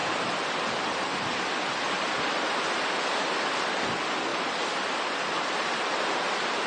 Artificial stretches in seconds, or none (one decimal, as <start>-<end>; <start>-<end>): none